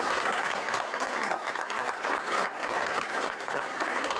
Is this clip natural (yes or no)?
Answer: no